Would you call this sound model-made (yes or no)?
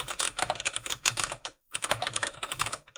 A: yes